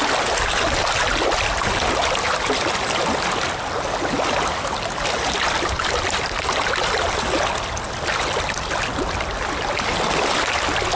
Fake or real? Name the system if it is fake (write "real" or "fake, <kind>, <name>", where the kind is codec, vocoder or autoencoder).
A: real